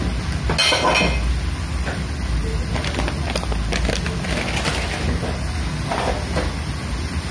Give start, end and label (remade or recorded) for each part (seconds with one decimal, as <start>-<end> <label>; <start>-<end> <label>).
0.0-7.3 recorded